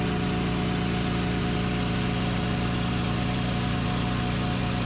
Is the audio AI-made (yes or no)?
no